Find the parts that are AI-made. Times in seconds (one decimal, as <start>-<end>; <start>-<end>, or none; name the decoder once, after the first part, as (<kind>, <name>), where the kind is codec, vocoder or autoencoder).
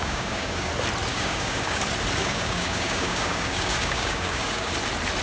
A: 0.0-0.7 (codec, DAC); 1.1-1.8; 2.2-4.7